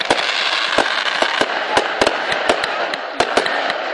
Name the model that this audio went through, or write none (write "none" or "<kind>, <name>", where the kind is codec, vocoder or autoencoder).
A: none